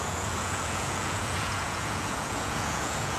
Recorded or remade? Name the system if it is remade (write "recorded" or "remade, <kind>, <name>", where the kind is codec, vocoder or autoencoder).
remade, vocoder, Vocos